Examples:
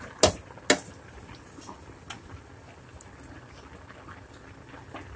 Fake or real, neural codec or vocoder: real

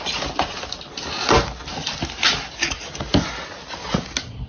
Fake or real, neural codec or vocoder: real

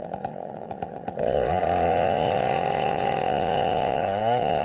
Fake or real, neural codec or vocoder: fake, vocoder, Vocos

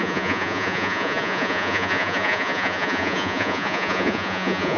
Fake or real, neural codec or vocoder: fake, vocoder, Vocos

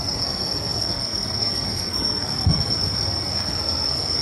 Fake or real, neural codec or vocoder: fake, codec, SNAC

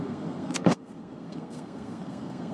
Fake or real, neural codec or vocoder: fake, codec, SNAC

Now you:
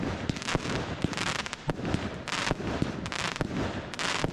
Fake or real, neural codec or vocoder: real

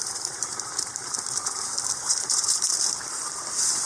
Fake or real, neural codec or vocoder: fake, vocoder, BigVGAN v2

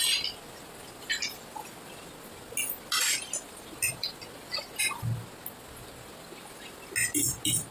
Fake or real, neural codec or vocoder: real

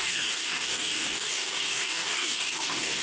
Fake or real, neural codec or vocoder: fake, codec, DAC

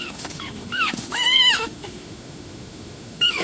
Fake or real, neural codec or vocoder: fake, autoencoder, DAC-VAE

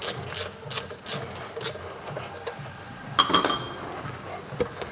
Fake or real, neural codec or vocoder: real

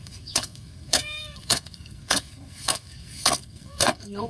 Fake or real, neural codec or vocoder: fake, codec, SNAC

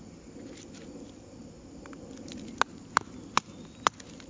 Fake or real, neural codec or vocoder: real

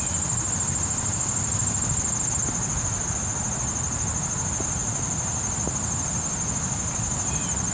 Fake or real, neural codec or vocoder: real